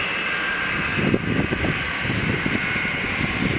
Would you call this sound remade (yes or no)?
yes